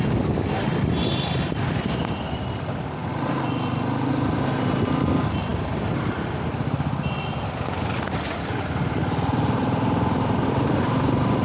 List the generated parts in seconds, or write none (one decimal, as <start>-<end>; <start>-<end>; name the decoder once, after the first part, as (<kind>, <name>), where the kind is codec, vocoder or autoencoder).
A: none